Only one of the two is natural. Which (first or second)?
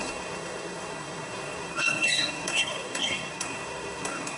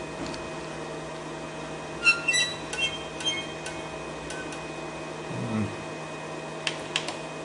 second